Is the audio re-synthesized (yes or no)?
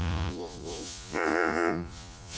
yes